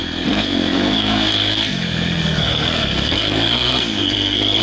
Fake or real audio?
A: fake